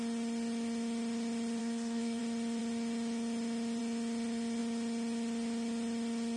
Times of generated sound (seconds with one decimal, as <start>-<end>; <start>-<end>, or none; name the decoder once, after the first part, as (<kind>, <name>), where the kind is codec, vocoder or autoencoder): 1.6-2.2 (codec, SNAC)